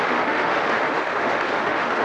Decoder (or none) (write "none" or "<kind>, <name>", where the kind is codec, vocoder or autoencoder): autoencoder, DAC-VAE